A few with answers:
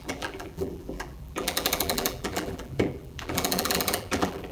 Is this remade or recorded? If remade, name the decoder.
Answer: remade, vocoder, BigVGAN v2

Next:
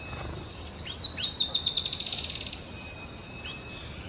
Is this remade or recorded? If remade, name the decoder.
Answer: recorded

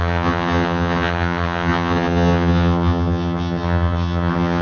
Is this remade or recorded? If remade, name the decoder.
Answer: remade, vocoder, HiFi-GAN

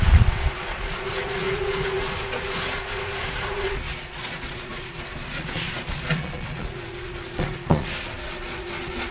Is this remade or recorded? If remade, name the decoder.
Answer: remade, vocoder, Vocos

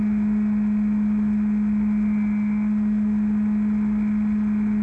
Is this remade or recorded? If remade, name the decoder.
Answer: recorded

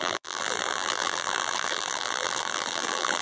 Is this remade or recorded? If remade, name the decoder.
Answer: remade, vocoder, BigVGAN v2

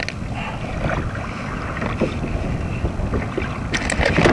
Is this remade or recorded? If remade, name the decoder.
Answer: recorded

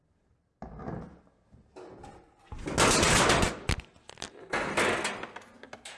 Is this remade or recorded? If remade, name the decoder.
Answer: recorded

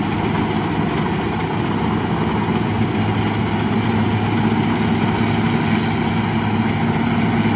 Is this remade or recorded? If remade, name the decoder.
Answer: recorded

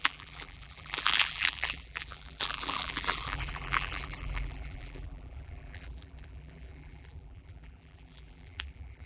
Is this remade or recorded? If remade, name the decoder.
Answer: remade, vocoder, BigVGAN v2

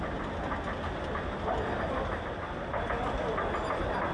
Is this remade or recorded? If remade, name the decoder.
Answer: recorded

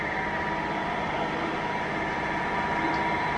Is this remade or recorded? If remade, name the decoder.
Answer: remade, vocoder, BigVGAN v2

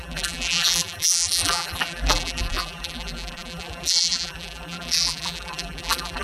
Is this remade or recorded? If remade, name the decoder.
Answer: remade, vocoder, BigVGAN v2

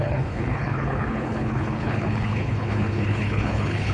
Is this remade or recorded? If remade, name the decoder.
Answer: remade, codec, HILCodec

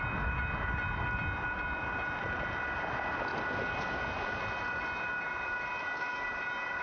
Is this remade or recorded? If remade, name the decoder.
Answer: recorded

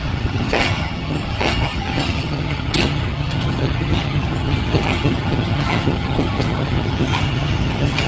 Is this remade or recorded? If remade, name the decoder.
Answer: remade, vocoder, HiFi-GAN